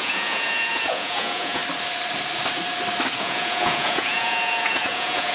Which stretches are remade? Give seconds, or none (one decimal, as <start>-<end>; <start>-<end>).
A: 0.0-1.6; 3.2-5.3